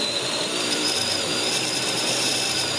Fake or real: fake